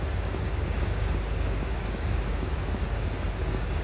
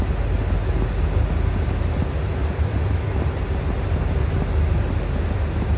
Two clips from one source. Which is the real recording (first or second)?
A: second